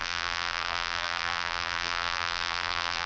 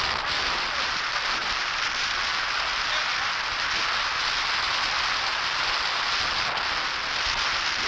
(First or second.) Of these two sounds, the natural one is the second